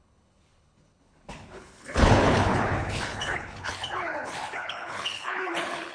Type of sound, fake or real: fake